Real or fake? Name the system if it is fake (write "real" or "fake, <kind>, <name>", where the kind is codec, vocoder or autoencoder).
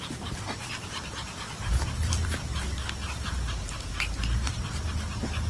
fake, vocoder, BigVGAN v2